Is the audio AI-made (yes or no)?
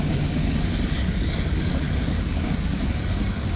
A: yes